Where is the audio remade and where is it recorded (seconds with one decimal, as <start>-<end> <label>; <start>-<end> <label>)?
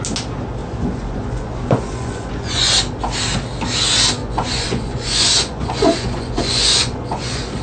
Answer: 0.0-0.6 recorded; 0.6-2.7 remade; 2.7-4.2 recorded; 4.2-7.6 remade